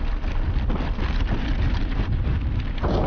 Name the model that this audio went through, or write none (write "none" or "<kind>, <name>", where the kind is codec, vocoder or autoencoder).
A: none